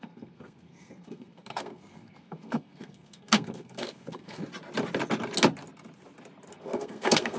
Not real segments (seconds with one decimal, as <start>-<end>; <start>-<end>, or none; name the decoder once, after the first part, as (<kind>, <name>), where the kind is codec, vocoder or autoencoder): 0.0-4.4 (codec, SNAC); 6.5-7.4